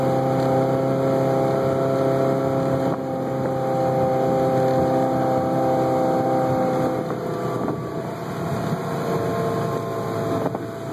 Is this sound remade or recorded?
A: recorded